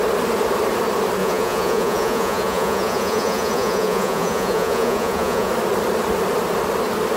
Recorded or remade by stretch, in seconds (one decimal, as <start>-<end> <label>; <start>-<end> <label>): 0.0-1.2 recorded; 1.2-5.5 remade; 5.5-7.2 recorded